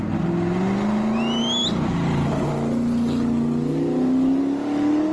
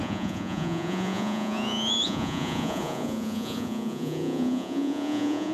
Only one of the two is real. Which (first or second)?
first